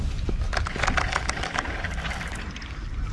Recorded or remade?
recorded